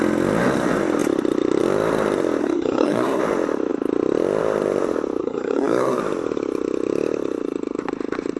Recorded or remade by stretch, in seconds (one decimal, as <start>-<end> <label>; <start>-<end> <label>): 0.0-2.4 recorded; 2.4-3.2 remade; 3.2-5.2 recorded; 5.2-6.0 remade; 6.0-8.4 recorded